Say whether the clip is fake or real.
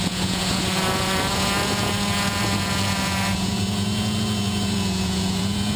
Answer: fake